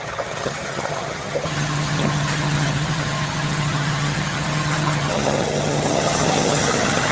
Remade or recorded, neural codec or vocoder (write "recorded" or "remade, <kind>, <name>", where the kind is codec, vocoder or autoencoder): remade, vocoder, HiFi-GAN